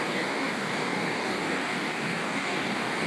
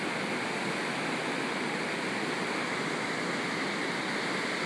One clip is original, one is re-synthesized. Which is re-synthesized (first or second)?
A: first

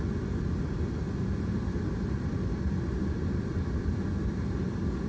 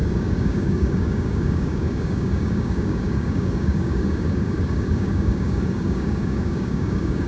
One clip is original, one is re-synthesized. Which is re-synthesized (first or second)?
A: second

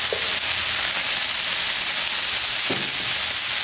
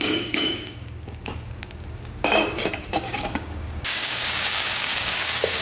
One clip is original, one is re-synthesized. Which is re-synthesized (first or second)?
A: second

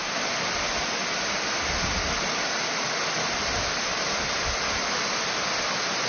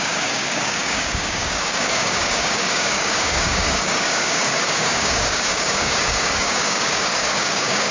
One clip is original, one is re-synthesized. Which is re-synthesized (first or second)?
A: second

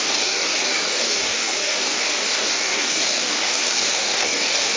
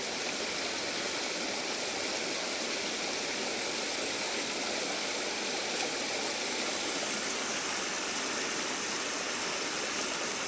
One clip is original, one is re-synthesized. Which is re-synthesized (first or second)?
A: first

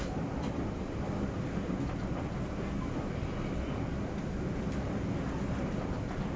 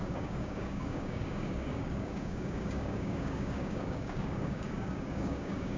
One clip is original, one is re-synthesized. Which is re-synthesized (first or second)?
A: second